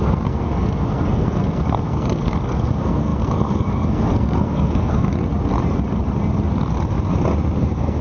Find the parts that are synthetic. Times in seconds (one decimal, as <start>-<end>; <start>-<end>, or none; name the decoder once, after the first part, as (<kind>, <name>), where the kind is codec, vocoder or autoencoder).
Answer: 0.0-5.1 (codec, SNAC); 7.6-8.0